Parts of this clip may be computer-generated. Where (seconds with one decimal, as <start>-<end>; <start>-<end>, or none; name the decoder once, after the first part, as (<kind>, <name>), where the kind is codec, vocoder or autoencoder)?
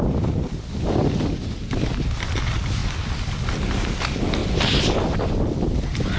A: 1.0-1.9 (vocoder, BigVGAN v2); 4.4-6.2